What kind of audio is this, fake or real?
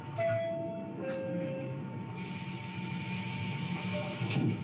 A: fake